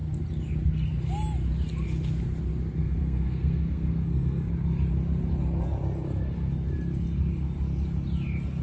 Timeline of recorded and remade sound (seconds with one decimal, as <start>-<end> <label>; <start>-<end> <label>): 0.0-2.8 recorded; 2.8-4.5 remade; 4.5-8.6 recorded